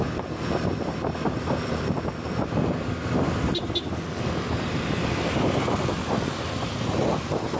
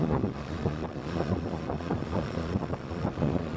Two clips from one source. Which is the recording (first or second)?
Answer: first